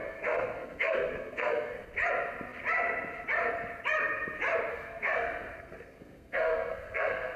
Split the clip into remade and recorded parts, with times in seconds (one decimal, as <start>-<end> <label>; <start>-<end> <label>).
0.0-1.9 remade; 1.9-4.7 recorded; 4.7-7.4 remade